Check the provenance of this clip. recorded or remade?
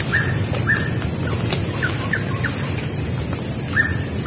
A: remade